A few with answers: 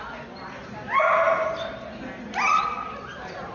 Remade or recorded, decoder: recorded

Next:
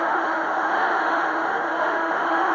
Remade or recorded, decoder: remade, autoencoder, DAC-VAE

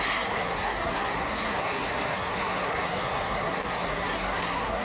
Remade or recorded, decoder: remade, codec, SNAC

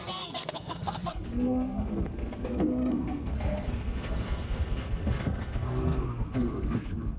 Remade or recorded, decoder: remade, codec, SNAC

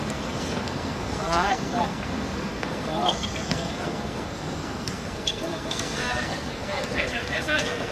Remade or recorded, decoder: remade, codec, SNAC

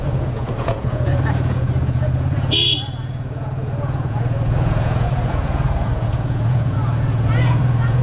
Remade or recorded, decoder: remade, vocoder, Vocos